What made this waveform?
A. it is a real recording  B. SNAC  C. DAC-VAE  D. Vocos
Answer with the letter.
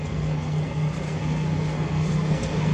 B